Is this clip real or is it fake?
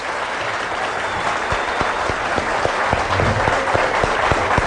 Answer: real